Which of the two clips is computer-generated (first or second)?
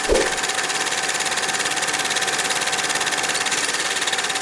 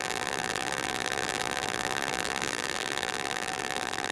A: second